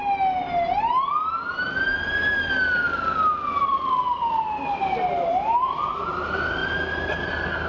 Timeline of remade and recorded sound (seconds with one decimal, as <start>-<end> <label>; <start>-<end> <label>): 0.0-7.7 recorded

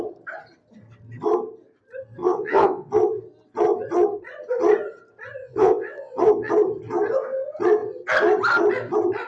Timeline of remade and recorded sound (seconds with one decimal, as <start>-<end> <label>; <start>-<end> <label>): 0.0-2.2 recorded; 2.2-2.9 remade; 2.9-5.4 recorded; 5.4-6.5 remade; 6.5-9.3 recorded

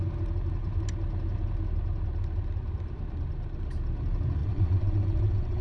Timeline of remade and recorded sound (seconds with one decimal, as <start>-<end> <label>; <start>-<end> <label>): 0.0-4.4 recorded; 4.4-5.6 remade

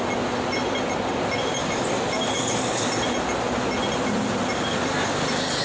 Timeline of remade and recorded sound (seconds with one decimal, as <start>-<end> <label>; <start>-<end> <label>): 0.0-5.6 recorded

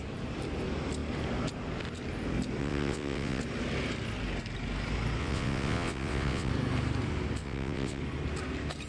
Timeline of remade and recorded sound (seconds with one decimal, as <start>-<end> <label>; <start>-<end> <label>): 0.0-2.6 recorded; 2.6-3.4 remade; 3.4-5.2 recorded; 5.2-6.5 remade; 6.5-7.4 recorded; 7.4-8.0 remade; 8.0-8.9 recorded